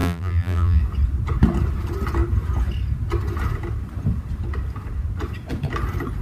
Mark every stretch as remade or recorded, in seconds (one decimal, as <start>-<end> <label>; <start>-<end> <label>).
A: 0.0-0.8 remade; 0.8-6.2 recorded